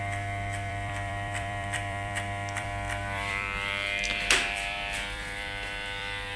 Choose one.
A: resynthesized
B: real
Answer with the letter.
A